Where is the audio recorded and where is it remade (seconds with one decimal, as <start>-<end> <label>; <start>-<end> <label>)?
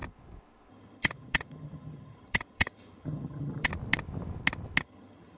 0.0-0.7 recorded; 0.7-3.7 remade; 3.7-4.8 recorded; 4.8-5.4 remade